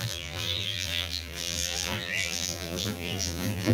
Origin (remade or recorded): remade